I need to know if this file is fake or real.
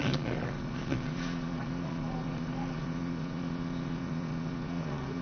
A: fake